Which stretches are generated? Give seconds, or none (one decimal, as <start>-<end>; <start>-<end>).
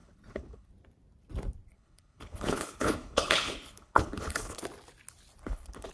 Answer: 0.0-0.7; 1.7-4.6; 5.4-5.9